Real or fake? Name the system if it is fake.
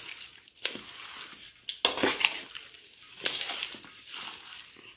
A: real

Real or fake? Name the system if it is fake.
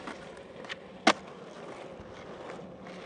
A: real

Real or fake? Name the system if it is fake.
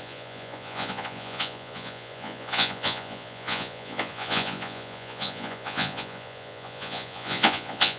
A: fake, vocoder, Vocos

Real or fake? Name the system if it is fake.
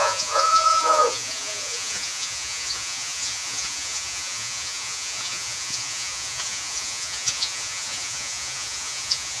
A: fake, vocoder, Vocos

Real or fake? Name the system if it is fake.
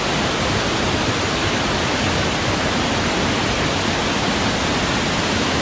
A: real